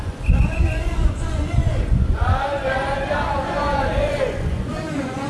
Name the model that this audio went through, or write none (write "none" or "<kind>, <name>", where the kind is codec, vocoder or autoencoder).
vocoder, Vocos